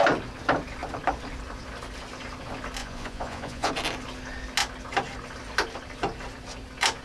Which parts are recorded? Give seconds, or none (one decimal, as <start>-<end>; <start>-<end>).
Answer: 0.0-2.8; 3.7-7.0